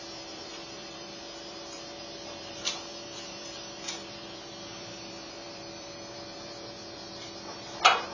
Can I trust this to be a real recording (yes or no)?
no